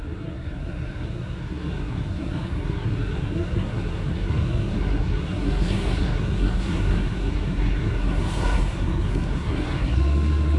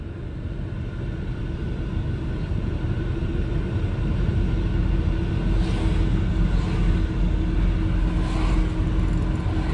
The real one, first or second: second